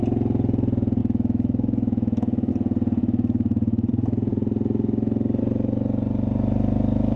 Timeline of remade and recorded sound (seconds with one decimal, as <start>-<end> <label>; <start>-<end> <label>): 0.0-1.0 recorded; 1.0-2.5 remade; 2.5-3.0 recorded; 3.0-3.9 remade; 3.9-7.2 recorded